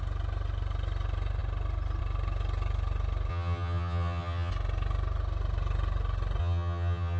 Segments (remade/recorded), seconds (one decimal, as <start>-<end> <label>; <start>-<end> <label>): 0.0-3.3 recorded; 3.3-4.5 remade; 4.5-6.4 recorded; 6.4-7.2 remade